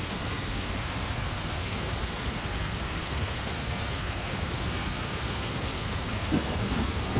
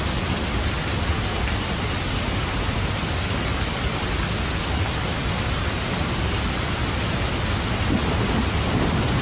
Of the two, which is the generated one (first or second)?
first